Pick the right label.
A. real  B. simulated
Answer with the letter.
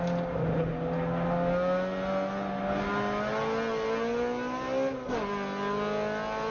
A